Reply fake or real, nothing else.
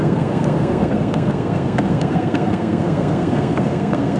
fake